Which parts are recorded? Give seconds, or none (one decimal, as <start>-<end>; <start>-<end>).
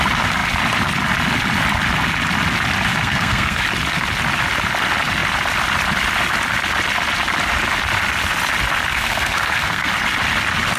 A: 0.0-2.9; 3.6-8.9; 9.9-10.8